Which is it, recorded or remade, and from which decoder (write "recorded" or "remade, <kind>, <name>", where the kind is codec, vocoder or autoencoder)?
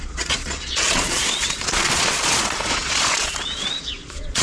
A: remade, vocoder, Vocos